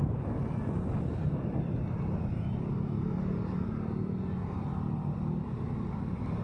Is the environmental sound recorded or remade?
recorded